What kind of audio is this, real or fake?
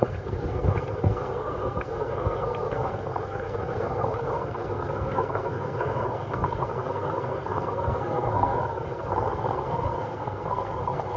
fake